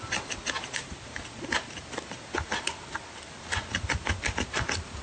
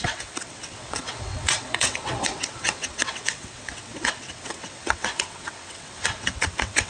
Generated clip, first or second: second